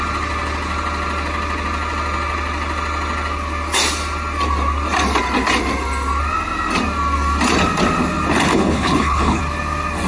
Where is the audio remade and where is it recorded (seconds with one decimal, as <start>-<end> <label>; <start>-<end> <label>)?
0.0-8.5 recorded; 8.5-9.4 remade; 9.4-10.1 recorded